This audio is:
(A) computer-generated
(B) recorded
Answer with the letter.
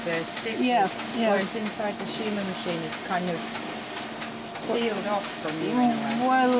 B